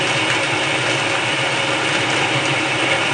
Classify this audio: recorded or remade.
recorded